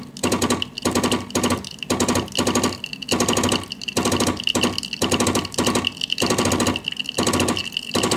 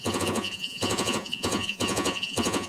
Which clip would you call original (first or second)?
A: first